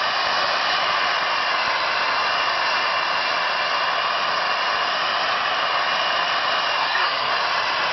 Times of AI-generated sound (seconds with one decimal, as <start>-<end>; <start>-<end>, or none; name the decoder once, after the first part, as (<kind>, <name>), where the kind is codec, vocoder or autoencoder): 6.8-7.3 (codec, SNAC)